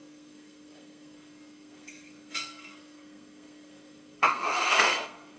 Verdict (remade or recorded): remade